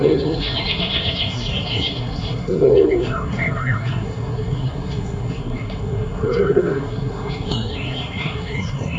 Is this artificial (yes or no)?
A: yes